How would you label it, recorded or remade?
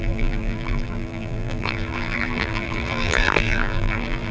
remade